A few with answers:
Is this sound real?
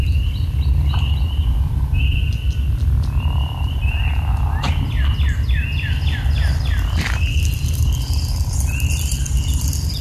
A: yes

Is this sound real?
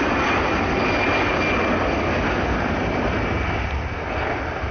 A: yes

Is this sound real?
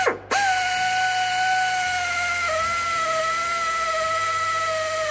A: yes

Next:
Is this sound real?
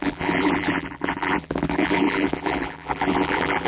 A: no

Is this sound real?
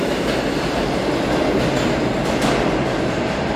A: yes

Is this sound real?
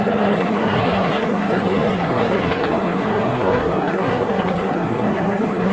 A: no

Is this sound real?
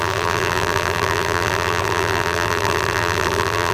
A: no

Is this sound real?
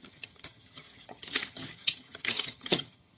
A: no